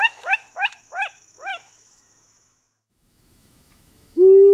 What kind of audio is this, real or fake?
fake